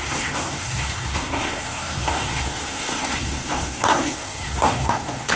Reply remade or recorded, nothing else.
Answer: remade